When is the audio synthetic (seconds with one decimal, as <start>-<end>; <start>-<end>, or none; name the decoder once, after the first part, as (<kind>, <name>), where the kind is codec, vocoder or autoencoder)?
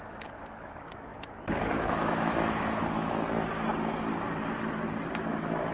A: 0.0-3.7 (autoencoder, DAC-VAE); 5.3-5.7